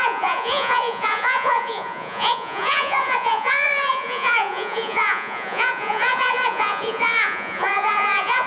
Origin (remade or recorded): remade